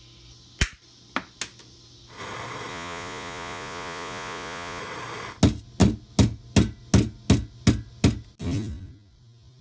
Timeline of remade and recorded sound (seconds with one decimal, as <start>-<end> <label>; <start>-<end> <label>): 0.0-2.7 recorded; 2.7-4.8 remade; 4.8-9.6 recorded